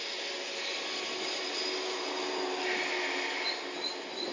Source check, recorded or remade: recorded